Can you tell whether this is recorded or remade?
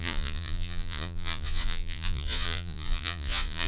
remade